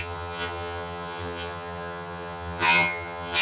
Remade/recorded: remade